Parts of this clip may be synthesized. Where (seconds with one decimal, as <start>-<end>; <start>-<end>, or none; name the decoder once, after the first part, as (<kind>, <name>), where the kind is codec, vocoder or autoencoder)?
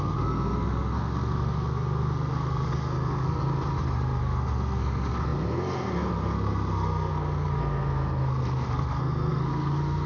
0.0-3.5 (codec, SNAC); 4.2-10.1